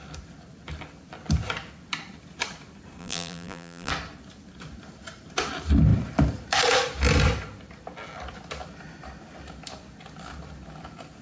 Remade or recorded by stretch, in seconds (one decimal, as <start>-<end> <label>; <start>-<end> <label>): 0.0-3.0 recorded; 3.0-3.9 remade; 3.9-11.2 recorded